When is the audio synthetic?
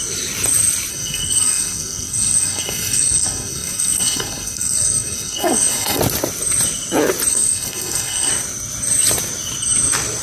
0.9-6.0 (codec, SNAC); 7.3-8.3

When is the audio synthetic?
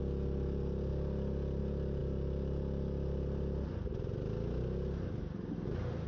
none